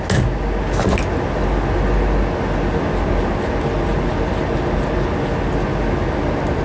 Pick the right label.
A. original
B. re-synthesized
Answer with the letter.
A